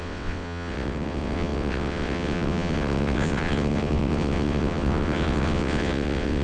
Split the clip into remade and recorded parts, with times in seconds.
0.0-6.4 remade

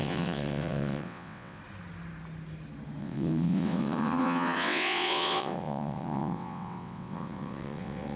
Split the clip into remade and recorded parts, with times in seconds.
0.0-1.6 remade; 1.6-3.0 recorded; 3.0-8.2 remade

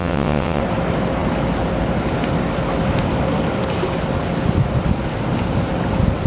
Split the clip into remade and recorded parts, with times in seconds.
0.0-0.6 remade; 0.6-6.3 recorded

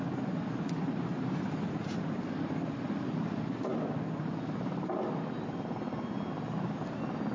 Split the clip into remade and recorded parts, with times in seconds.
0.0-7.3 recorded